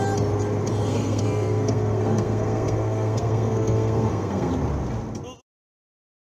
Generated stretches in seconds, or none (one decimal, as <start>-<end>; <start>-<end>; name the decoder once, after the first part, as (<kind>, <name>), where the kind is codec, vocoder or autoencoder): 0.8-4.5 (codec, SNAC)